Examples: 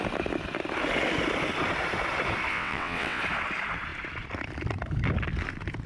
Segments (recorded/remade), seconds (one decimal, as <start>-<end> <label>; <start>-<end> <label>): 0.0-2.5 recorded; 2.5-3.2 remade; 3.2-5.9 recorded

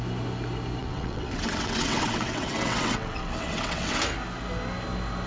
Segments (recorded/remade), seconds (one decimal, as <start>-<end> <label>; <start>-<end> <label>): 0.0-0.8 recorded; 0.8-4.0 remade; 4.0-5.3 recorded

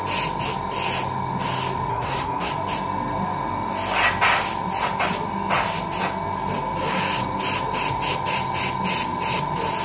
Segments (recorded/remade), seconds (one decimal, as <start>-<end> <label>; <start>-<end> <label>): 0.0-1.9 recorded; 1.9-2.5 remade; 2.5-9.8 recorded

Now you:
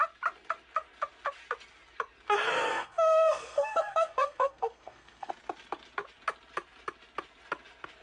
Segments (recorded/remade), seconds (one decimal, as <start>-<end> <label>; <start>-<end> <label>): 0.0-2.7 recorded; 2.7-5.3 remade; 5.3-8.0 recorded

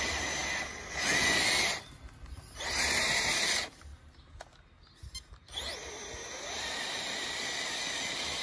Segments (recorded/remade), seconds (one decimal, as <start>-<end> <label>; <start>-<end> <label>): 0.0-8.4 recorded